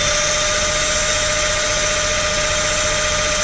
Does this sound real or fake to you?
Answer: real